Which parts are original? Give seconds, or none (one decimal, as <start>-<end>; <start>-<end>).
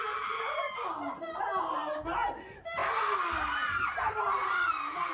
0.0-5.1